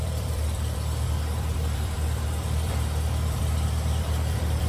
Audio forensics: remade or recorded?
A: remade